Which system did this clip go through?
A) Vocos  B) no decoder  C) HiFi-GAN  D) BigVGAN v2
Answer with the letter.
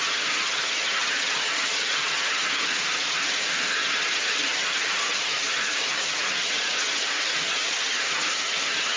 C